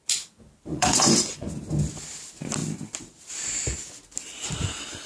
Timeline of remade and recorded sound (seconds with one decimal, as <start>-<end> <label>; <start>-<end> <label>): 0.0-0.7 recorded; 0.7-1.5 remade; 1.5-5.1 recorded